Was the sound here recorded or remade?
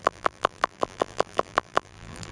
remade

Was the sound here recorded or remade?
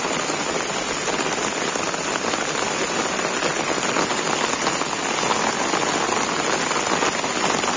recorded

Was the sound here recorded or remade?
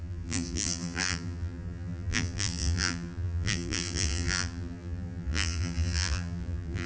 remade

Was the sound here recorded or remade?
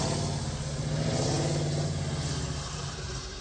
recorded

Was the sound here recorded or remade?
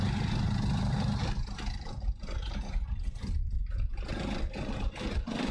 recorded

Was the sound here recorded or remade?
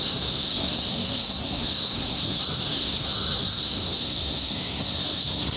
remade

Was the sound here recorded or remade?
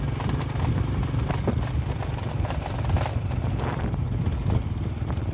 recorded